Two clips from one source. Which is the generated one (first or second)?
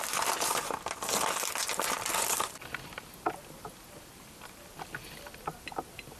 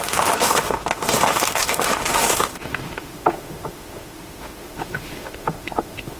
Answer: second